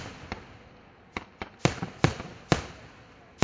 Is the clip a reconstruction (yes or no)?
no